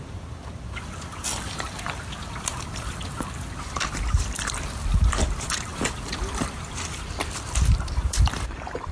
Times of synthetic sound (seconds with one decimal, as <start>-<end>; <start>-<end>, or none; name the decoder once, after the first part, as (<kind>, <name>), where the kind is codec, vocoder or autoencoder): 0.0-8.9 (vocoder, BigVGAN v2)